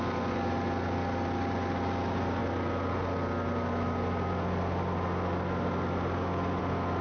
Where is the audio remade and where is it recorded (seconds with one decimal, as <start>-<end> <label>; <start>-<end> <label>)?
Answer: 0.0-7.0 recorded